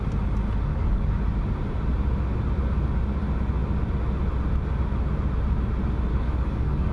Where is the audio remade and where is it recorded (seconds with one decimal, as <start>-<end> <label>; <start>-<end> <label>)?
0.0-0.7 recorded; 0.7-1.2 remade; 1.2-6.1 recorded; 6.1-6.9 remade

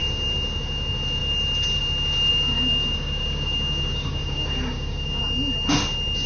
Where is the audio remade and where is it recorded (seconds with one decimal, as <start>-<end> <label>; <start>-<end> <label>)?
0.0-2.3 recorded; 2.3-5.2 remade; 5.2-6.3 recorded

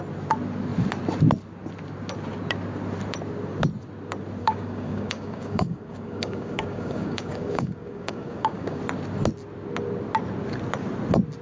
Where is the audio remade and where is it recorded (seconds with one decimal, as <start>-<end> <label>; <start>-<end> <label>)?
0.0-4.4 recorded; 4.4-8.8 remade; 8.8-11.4 recorded

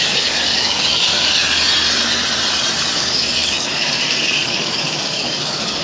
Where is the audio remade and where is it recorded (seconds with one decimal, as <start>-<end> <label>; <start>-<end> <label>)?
0.0-1.4 remade; 1.4-2.9 recorded; 2.9-5.8 remade

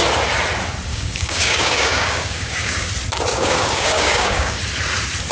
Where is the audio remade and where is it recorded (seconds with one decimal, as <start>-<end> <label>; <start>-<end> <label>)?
0.0-0.9 recorded; 0.9-2.9 remade; 2.9-3.3 recorded; 3.3-4.6 remade; 4.6-5.3 recorded

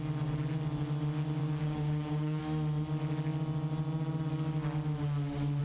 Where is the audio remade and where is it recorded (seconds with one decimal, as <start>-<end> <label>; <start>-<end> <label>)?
0.0-1.4 recorded; 1.4-2.4 remade; 2.4-5.6 recorded

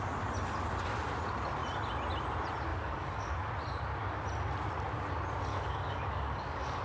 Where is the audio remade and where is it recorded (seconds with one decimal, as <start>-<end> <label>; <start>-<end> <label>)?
0.0-2.7 recorded; 2.7-3.5 remade; 3.5-5.5 recorded; 5.5-6.8 remade